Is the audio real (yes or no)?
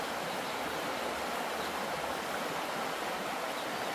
yes